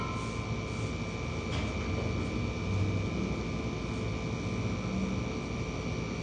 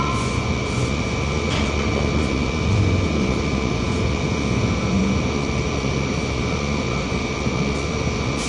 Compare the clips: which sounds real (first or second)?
first